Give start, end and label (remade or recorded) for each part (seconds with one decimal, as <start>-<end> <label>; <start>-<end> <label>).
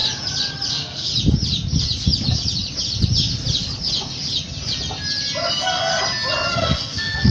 0.0-0.7 recorded; 0.7-1.1 remade; 1.1-5.5 recorded; 5.5-5.9 remade; 5.9-6.5 recorded; 6.5-7.3 remade